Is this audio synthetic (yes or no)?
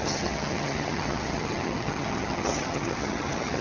yes